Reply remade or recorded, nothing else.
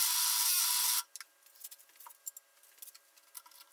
recorded